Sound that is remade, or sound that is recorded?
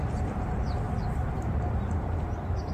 recorded